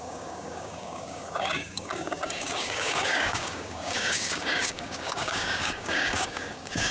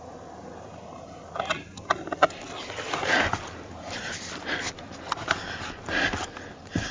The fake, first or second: first